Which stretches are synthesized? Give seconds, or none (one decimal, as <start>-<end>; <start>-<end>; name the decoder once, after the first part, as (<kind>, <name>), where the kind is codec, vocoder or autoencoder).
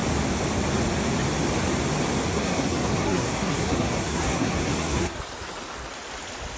2.3-5.2 (codec, SNAC)